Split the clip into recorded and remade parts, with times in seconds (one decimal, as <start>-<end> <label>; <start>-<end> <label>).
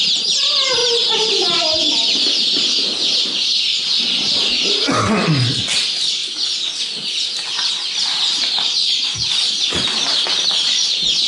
0.0-11.3 recorded